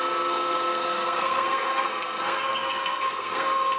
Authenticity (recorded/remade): remade